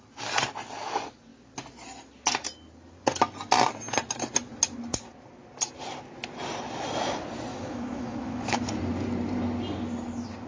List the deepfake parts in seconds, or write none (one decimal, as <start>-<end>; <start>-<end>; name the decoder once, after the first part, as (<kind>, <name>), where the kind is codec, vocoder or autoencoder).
7.5-8.6 (autoencoder, DAC-VAE)